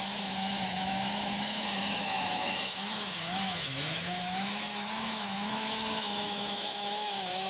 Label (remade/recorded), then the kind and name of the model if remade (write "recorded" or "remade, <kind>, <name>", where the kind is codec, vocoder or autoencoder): remade, autoencoder, DAC-VAE